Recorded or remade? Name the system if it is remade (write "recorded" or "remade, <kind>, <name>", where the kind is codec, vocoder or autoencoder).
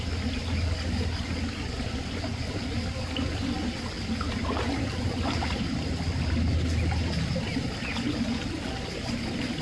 recorded